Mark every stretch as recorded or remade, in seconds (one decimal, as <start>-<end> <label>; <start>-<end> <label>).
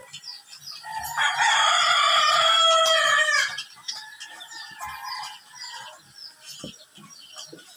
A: 0.0-0.9 recorded; 0.9-1.5 remade; 1.5-3.2 recorded; 3.2-5.3 remade; 5.3-7.8 recorded